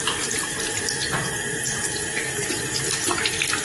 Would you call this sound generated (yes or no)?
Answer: no